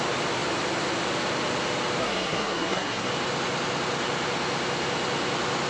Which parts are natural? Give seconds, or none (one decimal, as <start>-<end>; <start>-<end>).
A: 0.0-2.0; 3.1-5.7

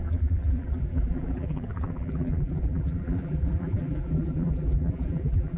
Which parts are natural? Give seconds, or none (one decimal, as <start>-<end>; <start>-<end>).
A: none